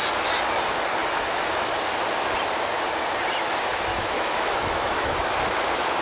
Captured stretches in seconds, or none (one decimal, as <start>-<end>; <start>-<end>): 0.0-1.0; 1.7-3.9; 5.3-6.0